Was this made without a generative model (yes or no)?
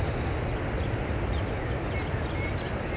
yes